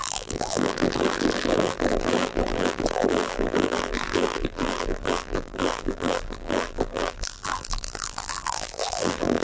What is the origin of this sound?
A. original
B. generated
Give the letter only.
B